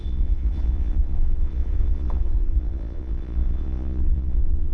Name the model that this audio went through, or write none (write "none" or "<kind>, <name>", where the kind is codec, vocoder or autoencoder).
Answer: vocoder, Vocos